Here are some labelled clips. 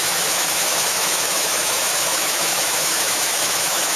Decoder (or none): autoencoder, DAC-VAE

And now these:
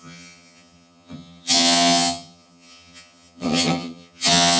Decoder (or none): vocoder, HiFi-GAN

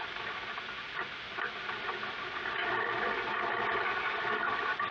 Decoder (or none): none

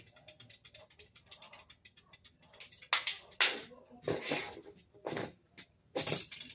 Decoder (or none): none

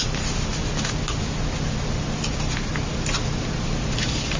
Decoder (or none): none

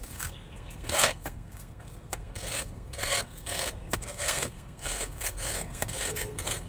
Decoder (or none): codec, SNAC